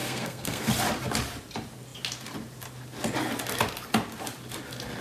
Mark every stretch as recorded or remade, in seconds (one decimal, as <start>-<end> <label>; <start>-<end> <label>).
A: 0.0-0.7 remade; 0.7-5.0 recorded